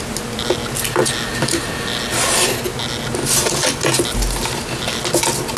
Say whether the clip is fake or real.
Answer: real